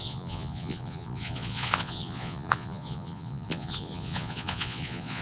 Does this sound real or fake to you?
fake